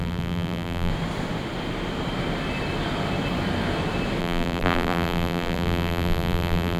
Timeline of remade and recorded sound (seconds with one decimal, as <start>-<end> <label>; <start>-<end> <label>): 0.0-0.9 remade; 0.9-4.2 recorded; 4.2-6.8 remade